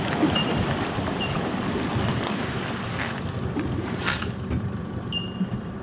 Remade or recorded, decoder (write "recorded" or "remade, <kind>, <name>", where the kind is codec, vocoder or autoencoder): remade, vocoder, BigVGAN v2